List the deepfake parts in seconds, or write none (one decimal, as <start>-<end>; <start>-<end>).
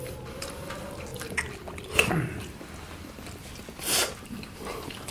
1.1-1.8; 4.0-5.1